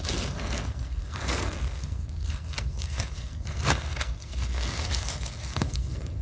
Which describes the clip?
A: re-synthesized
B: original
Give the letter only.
A